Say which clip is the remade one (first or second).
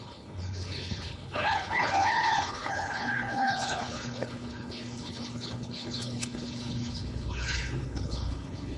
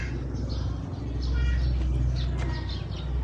first